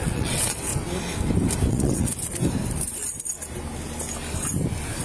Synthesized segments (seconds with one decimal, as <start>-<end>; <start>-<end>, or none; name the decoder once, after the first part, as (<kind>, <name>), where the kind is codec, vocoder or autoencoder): 0.0-0.7 (vocoder, WaveNeXt); 1.7-2.1